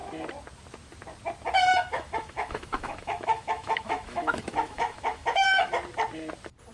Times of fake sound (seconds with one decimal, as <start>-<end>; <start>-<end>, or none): 1.7-5.7